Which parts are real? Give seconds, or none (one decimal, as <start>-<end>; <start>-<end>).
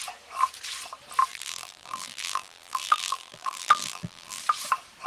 0.0-1.3; 4.4-5.1